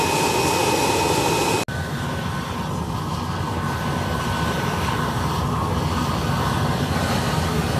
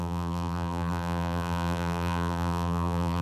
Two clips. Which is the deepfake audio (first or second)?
second